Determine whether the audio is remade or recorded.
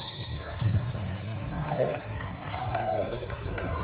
remade